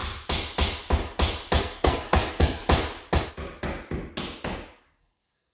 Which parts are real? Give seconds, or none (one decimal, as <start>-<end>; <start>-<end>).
0.0-1.6; 2.6-5.0